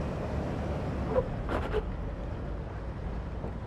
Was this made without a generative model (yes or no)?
yes